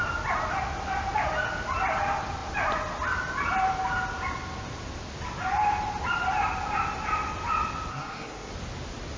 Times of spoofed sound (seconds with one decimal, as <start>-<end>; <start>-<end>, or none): 7.9-8.5